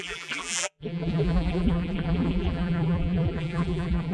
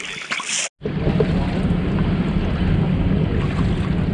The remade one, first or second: first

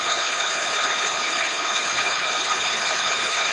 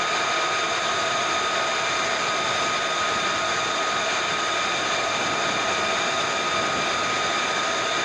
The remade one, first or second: first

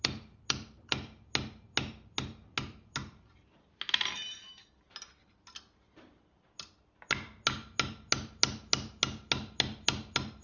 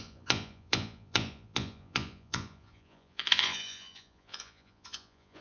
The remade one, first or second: second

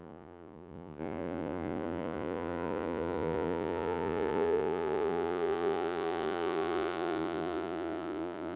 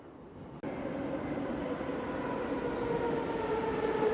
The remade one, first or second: first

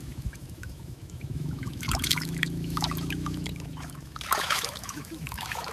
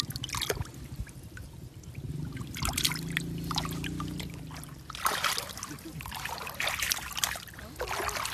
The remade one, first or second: first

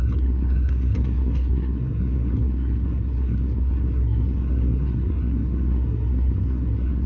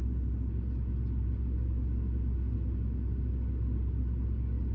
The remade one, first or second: first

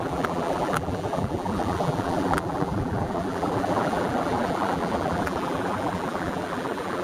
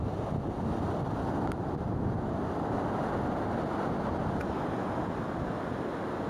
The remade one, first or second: first